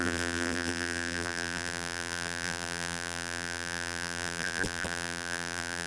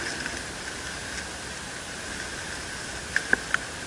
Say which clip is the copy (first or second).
first